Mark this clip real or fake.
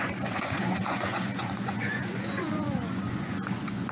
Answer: fake